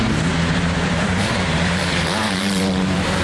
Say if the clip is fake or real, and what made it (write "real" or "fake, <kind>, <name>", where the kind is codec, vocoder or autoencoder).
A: fake, vocoder, BigVGAN v2